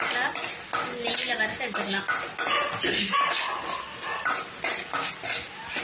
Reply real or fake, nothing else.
real